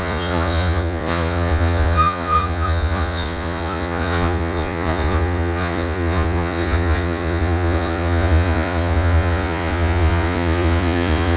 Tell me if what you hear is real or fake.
fake